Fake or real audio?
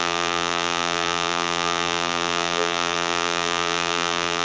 fake